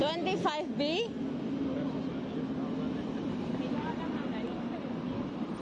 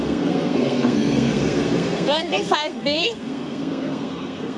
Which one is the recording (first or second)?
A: first